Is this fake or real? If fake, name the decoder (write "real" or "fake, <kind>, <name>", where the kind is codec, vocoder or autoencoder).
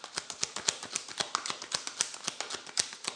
real